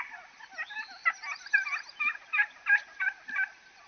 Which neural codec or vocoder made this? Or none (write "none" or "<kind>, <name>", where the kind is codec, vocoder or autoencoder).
none